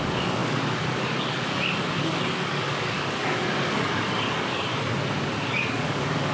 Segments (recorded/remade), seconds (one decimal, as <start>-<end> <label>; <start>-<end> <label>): 0.0-4.7 remade; 4.7-5.5 recorded; 5.5-6.3 remade